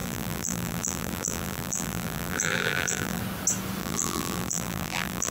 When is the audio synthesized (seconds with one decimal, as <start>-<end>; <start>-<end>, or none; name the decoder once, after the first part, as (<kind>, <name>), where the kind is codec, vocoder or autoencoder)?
0.0-3.2 (vocoder, BigVGAN v2); 3.8-5.3